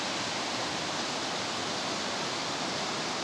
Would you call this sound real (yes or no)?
yes